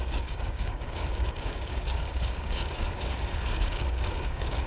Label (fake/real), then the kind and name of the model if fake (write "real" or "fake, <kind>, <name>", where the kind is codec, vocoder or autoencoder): fake, codec, DAC